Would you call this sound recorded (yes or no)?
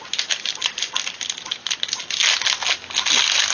yes